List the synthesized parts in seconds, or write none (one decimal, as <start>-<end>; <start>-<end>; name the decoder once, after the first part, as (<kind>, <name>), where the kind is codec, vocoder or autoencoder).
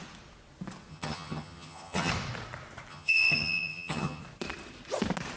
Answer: 0.9-2.1 (vocoder, HiFi-GAN); 2.9-4.2